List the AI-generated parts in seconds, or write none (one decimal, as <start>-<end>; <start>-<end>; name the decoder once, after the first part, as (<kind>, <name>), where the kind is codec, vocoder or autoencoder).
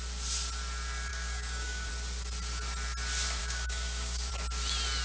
1.1-1.9 (codec, DAC); 3.4-4.3